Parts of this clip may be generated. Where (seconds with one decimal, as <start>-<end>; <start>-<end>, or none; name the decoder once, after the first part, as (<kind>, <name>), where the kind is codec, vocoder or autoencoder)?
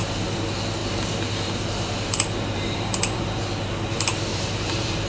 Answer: 0.8-3.4 (vocoder, BigVGAN v2); 4.3-5.1